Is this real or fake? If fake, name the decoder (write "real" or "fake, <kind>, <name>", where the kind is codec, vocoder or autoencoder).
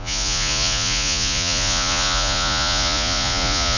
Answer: fake, vocoder, Vocos